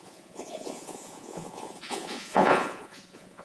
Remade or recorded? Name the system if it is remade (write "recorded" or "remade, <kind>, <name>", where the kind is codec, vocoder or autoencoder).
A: remade, vocoder, Vocos